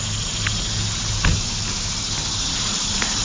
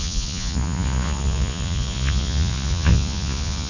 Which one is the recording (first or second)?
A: first